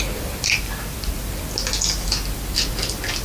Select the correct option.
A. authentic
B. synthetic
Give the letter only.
A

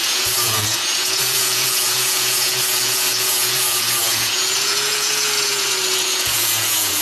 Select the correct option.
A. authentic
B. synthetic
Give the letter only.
B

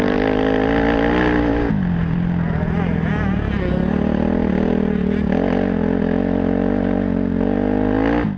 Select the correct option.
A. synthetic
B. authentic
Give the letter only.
B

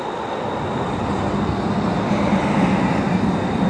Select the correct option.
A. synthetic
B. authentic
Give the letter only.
B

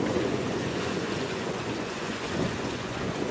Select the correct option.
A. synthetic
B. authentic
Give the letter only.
A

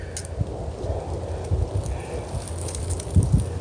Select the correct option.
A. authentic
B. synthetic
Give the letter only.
A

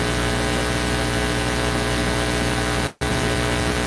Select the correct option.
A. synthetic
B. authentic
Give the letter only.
B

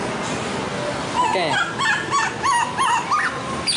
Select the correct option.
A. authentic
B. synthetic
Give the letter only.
A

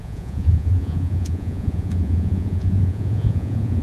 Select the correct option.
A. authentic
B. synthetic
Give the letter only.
B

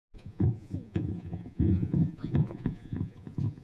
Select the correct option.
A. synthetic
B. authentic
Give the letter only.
A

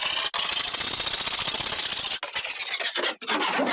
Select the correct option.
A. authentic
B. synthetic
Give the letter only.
A